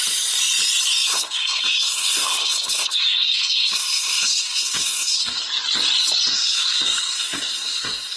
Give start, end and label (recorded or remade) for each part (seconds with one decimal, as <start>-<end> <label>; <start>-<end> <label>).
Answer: 0.0-1.1 recorded; 1.1-5.5 remade; 5.5-6.3 recorded; 6.3-8.2 remade